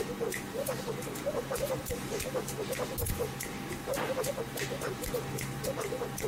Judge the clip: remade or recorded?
recorded